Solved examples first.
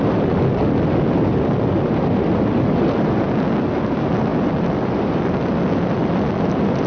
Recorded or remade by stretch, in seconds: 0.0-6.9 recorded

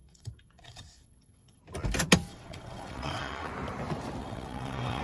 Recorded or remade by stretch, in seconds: 0.0-1.6 remade; 1.6-2.3 recorded; 2.3-3.5 remade; 3.5-4.2 recorded; 4.2-5.0 remade

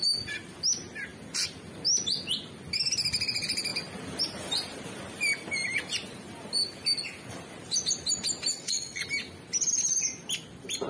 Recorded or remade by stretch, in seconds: 0.0-8.5 recorded; 8.5-9.0 remade; 9.0-10.9 recorded

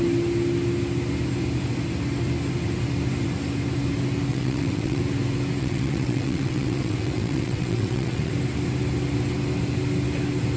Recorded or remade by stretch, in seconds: 0.0-4.3 recorded; 4.3-5.0 remade; 5.0-5.6 recorded; 5.6-8.3 remade; 8.3-10.6 recorded

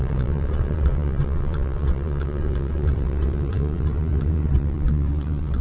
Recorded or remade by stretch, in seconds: 0.0-5.6 remade